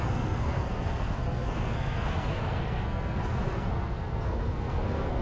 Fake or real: fake